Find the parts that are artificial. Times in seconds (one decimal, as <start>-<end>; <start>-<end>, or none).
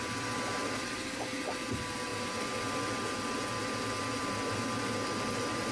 none